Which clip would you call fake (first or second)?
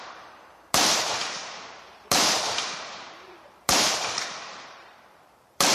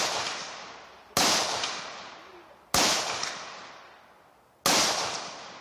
first